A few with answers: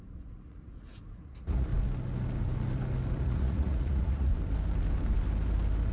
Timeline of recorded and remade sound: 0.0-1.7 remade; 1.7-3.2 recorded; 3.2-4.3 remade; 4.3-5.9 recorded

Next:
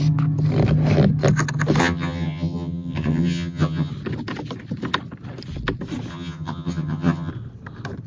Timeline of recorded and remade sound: 0.0-1.8 recorded; 1.8-3.9 remade; 3.9-6.1 recorded; 6.1-7.3 remade; 7.3-8.1 recorded

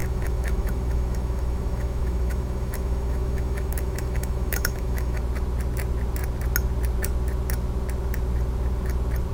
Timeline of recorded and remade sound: 0.0-5.2 remade; 5.2-9.3 recorded

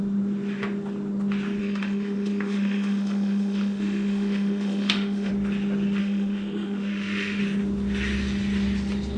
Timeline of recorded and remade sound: 0.0-1.6 recorded; 1.6-5.3 remade; 5.3-6.0 recorded; 6.0-7.4 remade; 7.4-9.2 recorded

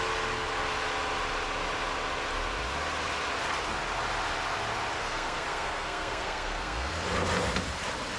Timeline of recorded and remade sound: 0.0-5.0 recorded; 5.0-6.9 remade; 6.9-8.2 recorded

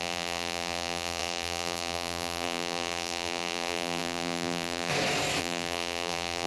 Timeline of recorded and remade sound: 0.0-4.9 remade; 4.9-5.4 recorded; 5.4-6.5 remade

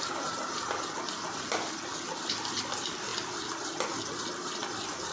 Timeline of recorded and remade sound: 0.0-5.1 recorded